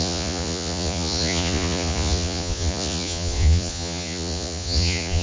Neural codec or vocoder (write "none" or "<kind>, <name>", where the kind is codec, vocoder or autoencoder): vocoder, Vocos